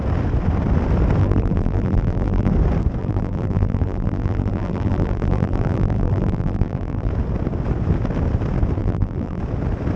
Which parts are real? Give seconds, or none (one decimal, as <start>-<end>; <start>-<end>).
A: 0.0-1.2; 2.5-3.0; 7.1-8.8; 9.4-10.0